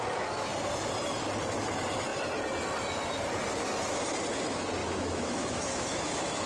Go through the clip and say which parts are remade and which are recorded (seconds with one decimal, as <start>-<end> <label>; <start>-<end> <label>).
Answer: 0.0-4.8 recorded; 4.8-6.5 remade